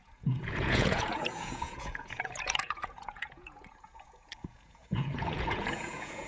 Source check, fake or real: fake